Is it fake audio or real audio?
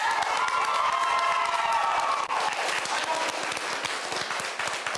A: real